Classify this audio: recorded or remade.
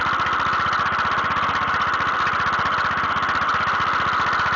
recorded